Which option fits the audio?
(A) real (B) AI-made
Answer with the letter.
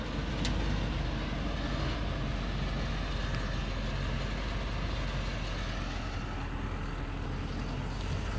A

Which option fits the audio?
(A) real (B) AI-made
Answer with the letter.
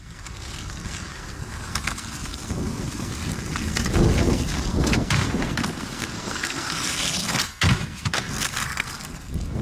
B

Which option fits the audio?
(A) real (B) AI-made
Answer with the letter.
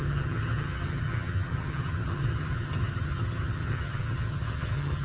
B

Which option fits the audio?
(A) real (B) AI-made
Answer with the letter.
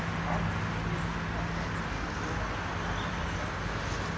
A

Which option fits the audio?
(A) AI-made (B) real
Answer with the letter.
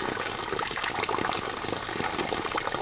B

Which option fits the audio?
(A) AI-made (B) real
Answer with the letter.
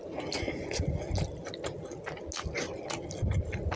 B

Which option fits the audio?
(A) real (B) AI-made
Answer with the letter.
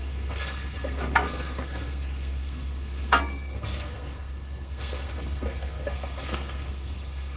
B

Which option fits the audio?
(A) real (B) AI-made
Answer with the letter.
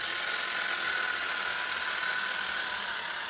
A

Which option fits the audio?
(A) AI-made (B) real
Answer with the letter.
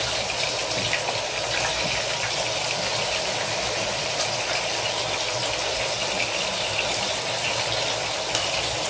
B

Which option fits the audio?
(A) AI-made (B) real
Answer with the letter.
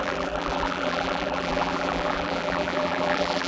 A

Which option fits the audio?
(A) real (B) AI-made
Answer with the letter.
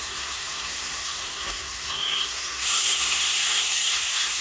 B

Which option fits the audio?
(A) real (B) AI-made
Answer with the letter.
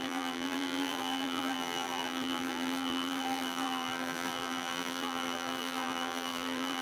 B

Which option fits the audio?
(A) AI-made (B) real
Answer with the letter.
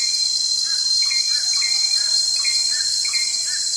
B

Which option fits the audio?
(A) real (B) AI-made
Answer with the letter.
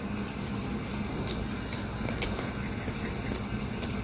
A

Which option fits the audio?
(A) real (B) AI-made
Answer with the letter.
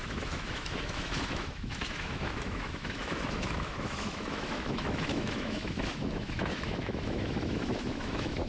B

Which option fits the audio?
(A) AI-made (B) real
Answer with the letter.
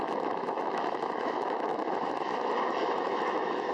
A